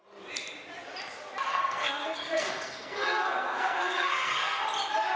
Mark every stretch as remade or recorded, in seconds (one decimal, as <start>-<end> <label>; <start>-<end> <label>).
0.0-1.5 recorded; 1.5-4.6 remade; 4.6-5.2 recorded